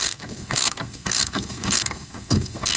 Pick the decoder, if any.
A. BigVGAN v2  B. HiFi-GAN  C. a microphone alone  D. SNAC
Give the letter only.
D